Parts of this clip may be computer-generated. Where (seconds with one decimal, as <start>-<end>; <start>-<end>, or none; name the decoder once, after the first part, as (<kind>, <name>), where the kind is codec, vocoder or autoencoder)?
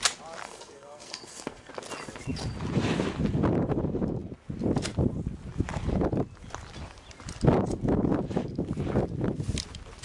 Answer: 0.4-1.7 (codec, SNAC)